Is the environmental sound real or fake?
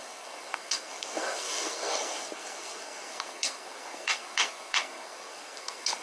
fake